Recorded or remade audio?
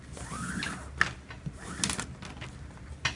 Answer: recorded